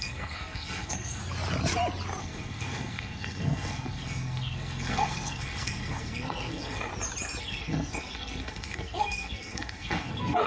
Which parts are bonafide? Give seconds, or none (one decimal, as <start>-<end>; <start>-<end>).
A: 1.2-2.2; 6.9-7.4